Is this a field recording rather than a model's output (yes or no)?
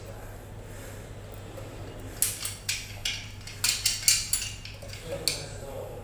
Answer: yes